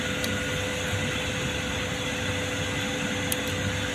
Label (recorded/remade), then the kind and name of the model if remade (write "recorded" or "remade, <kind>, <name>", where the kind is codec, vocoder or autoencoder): recorded